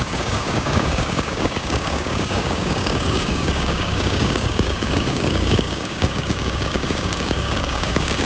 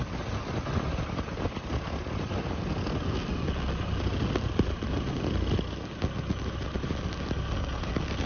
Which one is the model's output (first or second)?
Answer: first